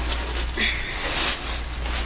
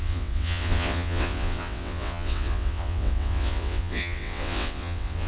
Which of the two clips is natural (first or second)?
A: first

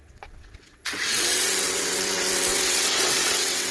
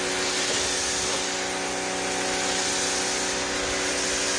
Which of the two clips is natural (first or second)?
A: second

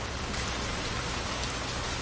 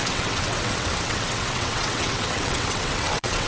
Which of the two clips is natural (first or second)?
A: first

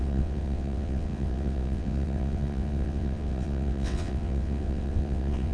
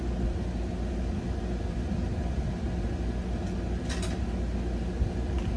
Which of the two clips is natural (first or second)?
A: second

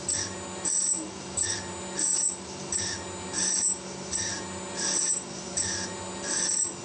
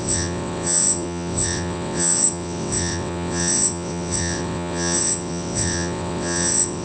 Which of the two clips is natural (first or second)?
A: first